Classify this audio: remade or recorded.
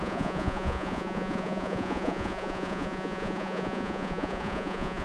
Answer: remade